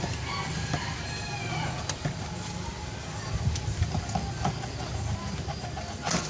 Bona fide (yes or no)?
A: yes